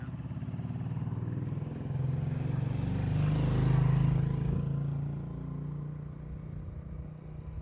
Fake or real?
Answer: real